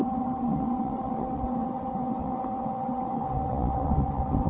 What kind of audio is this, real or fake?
fake